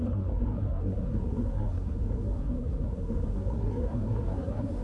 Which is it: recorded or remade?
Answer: remade